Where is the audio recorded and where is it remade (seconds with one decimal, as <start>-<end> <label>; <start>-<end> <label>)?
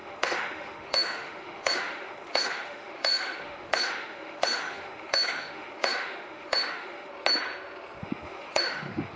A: 0.0-7.1 remade; 7.1-8.0 recorded; 8.0-9.2 remade